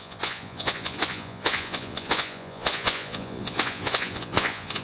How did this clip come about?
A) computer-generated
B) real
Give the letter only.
A